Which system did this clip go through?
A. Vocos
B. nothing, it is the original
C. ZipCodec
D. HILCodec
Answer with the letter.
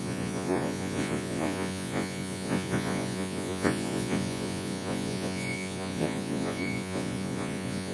A